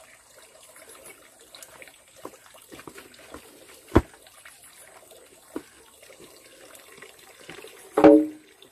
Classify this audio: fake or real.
real